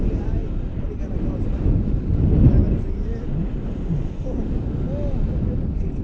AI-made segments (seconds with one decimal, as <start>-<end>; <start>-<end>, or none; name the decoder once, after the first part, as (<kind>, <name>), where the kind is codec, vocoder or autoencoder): none